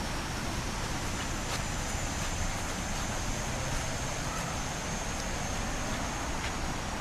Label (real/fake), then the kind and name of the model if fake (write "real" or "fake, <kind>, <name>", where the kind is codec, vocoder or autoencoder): fake, vocoder, BigVGAN v2